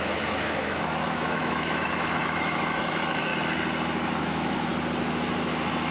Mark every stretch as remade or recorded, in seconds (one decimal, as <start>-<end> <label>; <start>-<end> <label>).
0.0-3.3 remade; 3.3-4.2 recorded; 4.2-4.7 remade; 4.7-5.9 recorded